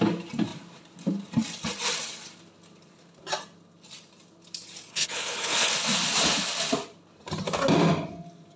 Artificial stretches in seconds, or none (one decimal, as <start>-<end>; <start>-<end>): 4.9-5.7